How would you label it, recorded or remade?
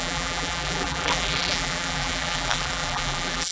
remade